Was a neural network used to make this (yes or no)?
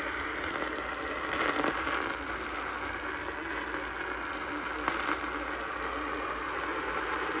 no